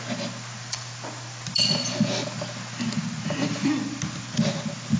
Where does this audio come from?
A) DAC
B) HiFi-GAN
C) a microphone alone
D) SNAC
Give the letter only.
C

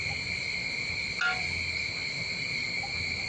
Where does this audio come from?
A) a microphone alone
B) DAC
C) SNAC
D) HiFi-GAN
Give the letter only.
A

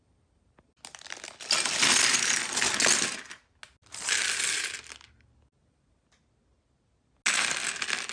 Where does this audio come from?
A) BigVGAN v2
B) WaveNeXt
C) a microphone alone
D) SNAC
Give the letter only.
C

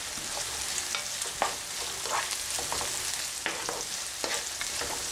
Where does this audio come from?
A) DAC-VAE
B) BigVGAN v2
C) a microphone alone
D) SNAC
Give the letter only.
C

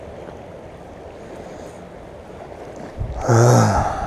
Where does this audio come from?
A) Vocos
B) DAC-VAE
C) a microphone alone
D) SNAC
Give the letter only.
C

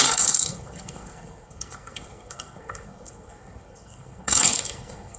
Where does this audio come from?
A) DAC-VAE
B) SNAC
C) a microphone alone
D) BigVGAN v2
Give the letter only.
B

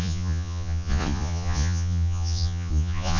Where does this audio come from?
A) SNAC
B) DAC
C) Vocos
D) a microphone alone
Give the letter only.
C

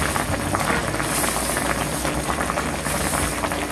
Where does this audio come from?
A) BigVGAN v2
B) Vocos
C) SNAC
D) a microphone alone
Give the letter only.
D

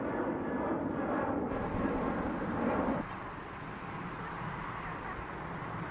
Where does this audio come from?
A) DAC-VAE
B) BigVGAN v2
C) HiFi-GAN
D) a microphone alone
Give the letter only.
B